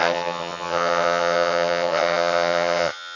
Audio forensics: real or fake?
fake